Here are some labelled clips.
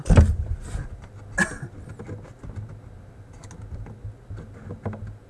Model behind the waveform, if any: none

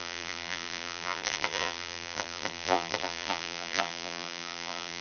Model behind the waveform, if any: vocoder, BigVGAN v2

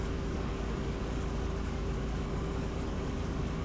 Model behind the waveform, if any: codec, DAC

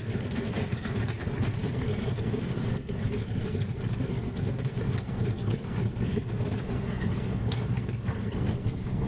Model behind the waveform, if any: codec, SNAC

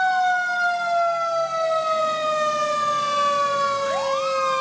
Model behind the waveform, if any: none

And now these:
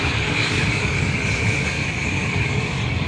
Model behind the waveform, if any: codec, DAC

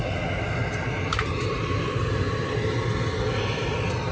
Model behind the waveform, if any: none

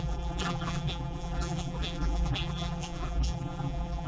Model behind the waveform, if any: vocoder, BigVGAN v2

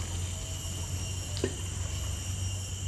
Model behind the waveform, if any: none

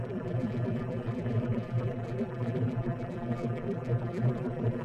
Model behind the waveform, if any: vocoder, BigVGAN v2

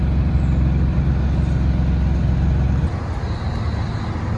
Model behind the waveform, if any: none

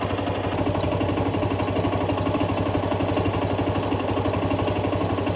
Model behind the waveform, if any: none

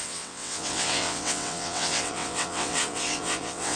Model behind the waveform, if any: vocoder, WaveNeXt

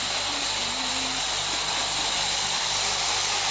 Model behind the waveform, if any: none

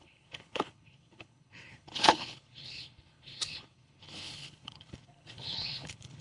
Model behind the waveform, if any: codec, HILCodec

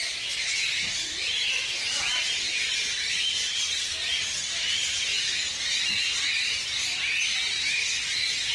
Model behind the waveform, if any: none